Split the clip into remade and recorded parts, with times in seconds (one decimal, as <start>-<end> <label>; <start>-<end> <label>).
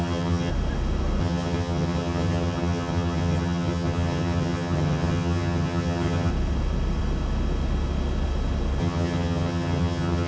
0.0-0.5 remade; 0.5-1.2 recorded; 1.2-6.3 remade; 6.3-8.8 recorded; 8.8-10.3 remade